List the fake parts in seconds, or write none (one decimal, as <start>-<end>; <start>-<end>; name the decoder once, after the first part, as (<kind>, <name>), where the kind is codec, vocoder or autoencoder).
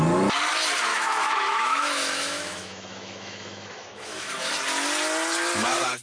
0.9-4.5 (autoencoder, DAC-VAE)